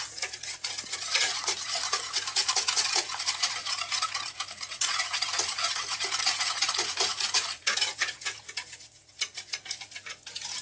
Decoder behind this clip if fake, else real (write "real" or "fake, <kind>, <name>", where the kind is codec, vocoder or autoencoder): fake, vocoder, Vocos